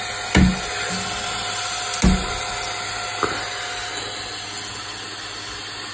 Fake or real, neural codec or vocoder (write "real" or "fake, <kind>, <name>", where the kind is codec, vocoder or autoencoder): real